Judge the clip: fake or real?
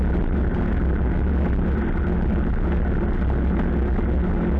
real